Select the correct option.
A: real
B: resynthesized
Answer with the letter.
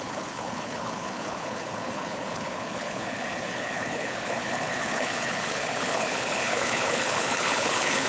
B